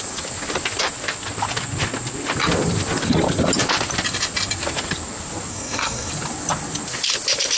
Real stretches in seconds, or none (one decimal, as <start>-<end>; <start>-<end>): 0.0-5.5; 6.1-7.6